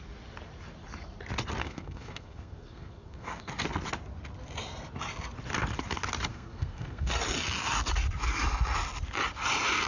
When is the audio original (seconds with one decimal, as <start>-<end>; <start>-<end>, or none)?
0.0-1.6; 3.5-6.3; 7.1-9.9